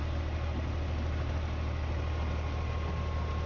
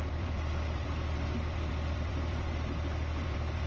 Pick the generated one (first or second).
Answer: second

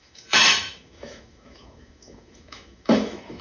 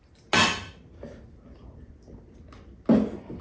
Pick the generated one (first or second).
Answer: first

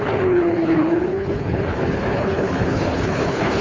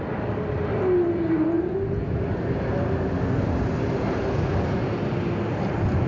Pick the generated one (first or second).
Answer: first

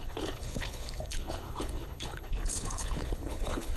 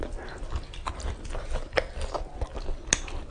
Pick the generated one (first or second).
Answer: first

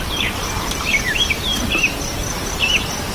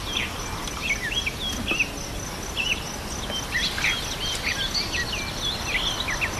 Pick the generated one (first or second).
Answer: first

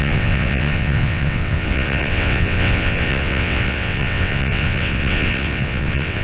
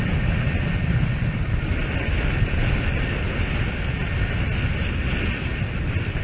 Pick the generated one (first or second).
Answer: first